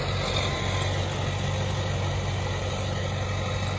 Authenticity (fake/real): real